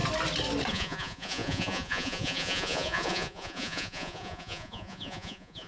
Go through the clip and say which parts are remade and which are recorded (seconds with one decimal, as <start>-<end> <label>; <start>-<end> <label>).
0.0-0.7 recorded; 0.7-5.7 remade